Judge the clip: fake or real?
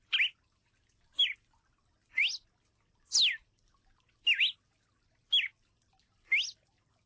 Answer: real